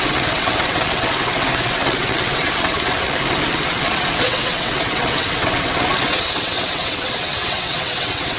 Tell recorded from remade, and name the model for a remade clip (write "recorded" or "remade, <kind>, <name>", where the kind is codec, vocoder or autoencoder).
remade, vocoder, WaveNeXt